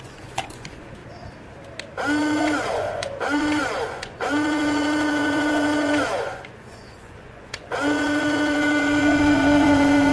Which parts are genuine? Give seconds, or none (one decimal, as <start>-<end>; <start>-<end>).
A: 1.0-2.2